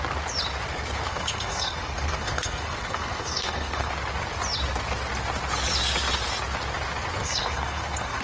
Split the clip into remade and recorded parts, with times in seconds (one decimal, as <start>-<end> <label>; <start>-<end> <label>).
0.0-0.7 recorded; 0.7-3.9 remade; 3.9-7.2 recorded; 7.2-8.2 remade